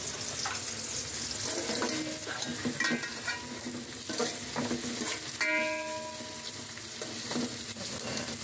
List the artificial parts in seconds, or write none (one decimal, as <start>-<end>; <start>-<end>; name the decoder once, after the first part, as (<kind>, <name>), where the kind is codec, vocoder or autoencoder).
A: none